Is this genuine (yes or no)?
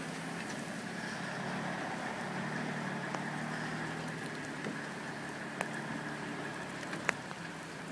yes